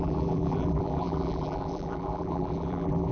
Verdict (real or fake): fake